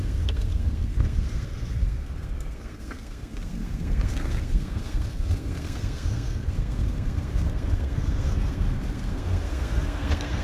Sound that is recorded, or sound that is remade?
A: remade